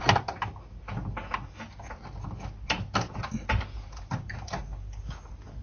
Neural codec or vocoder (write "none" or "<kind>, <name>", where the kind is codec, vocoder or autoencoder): none